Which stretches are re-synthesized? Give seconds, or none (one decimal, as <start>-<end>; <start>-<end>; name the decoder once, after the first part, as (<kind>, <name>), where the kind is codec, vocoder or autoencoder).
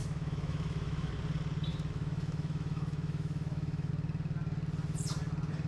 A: 0.0-1.1 (autoencoder, DAC-VAE); 1.7-3.9